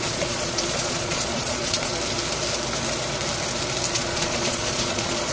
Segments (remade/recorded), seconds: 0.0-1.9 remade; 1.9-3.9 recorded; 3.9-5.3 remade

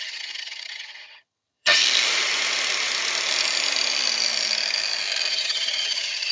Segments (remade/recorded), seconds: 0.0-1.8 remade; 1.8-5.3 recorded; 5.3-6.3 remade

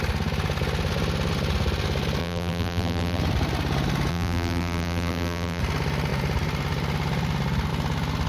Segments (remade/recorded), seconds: 0.0-2.2 recorded; 2.2-3.2 remade; 3.2-4.1 recorded; 4.1-5.6 remade; 5.6-8.3 recorded

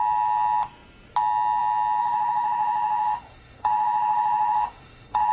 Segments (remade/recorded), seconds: 0.0-2.0 recorded; 2.0-5.3 remade